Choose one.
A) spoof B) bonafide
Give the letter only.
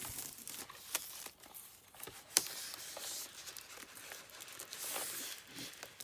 B